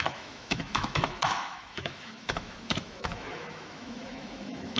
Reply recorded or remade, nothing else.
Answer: remade